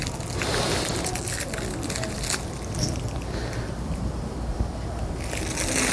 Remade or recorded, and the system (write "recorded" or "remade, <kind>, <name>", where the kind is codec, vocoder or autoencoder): recorded